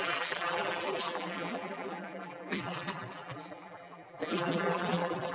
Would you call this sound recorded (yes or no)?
no